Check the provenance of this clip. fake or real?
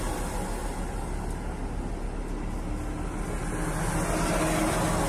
real